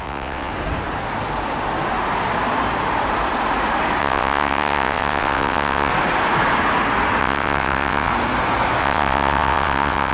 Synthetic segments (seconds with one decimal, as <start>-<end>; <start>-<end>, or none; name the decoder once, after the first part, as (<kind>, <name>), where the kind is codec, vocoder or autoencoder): 0.0-0.5 (vocoder, WaveNeXt); 4.0-5.9; 7.2-8.1; 8.8-10.1